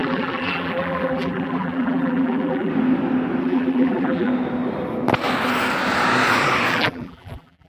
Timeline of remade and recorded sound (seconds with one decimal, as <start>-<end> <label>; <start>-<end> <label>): 0.0-2.7 remade; 2.7-3.4 recorded; 3.4-4.3 remade; 4.3-6.7 recorded; 6.7-7.7 remade